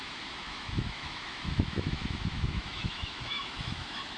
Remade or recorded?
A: remade